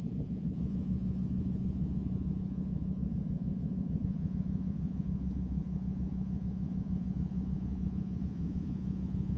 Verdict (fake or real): fake